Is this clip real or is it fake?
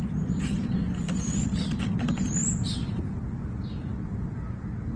fake